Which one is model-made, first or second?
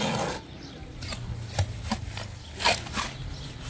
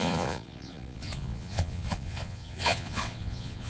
second